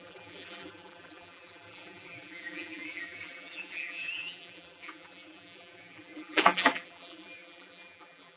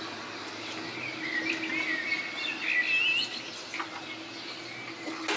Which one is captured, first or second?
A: second